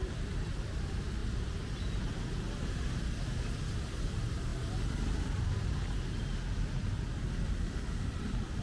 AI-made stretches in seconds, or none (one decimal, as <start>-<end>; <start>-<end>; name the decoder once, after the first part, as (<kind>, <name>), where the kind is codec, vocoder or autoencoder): 0.0-1.2 (vocoder, BigVGAN v2); 3.8-4.5; 7.5-8.6